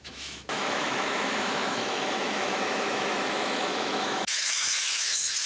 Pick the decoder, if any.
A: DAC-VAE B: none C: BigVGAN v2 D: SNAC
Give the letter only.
A